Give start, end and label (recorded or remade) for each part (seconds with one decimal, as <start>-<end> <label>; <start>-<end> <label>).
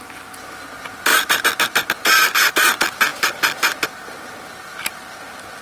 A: 0.0-5.6 recorded